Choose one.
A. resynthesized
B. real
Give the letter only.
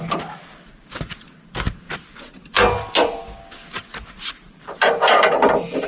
B